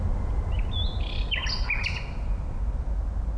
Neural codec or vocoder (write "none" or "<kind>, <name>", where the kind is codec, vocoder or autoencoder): none